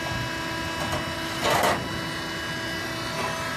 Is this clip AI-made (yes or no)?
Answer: no